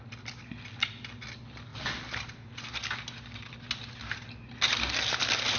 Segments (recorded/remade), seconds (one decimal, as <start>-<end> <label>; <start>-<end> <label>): 0.0-5.6 recorded